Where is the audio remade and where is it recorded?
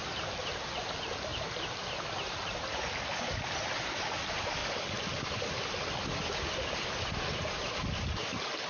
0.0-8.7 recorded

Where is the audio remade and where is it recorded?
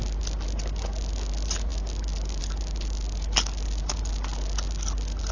0.0-5.3 recorded